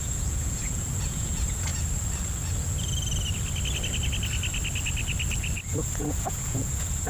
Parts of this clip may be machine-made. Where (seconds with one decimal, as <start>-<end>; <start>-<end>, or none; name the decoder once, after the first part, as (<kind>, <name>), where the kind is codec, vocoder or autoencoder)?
0.0-1.7 (vocoder, Vocos); 6.0-7.1